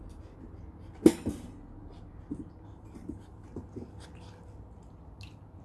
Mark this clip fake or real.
real